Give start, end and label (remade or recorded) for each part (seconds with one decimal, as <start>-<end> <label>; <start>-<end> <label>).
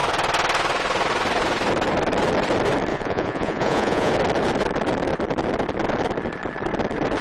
0.0-2.9 recorded; 2.9-4.1 remade; 4.1-7.2 recorded